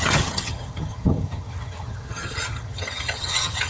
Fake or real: fake